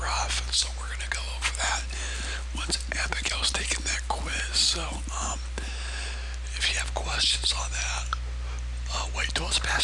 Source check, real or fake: real